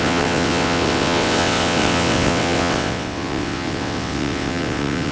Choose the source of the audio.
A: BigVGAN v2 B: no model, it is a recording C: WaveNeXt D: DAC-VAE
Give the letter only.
C